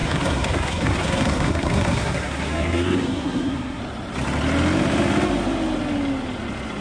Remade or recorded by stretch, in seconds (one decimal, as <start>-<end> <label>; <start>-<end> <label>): 0.0-3.8 remade; 3.8-6.8 recorded